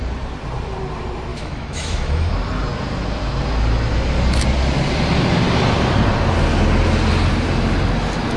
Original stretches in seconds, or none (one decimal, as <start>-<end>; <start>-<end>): 0.0-1.3; 2.3-8.4